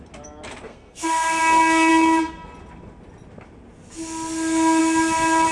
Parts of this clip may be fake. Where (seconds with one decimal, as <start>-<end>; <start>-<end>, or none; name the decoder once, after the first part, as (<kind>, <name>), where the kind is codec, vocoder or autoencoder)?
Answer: 0.7-1.4 (codec, SNAC)